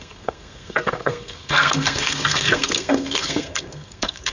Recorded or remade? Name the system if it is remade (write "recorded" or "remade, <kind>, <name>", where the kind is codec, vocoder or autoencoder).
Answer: remade, codec, SNAC